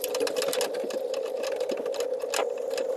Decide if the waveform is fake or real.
real